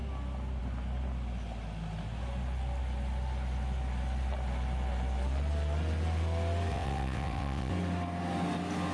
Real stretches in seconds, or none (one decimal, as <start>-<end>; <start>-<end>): 0.0-6.7; 7.7-8.9